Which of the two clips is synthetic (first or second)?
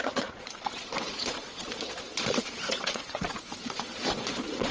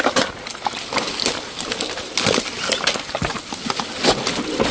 first